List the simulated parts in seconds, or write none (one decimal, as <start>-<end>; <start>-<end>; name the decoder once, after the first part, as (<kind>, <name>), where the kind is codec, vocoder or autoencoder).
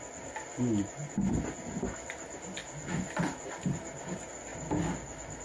none